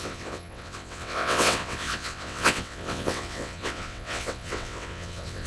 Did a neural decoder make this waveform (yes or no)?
yes